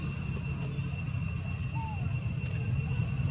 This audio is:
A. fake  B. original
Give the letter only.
B